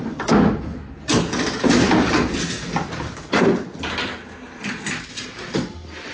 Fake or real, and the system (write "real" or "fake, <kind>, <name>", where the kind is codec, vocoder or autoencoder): real